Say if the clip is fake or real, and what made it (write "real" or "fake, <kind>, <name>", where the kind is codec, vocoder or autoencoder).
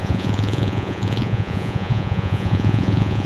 fake, vocoder, Vocos